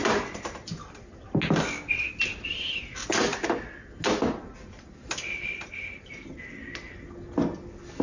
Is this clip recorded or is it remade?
recorded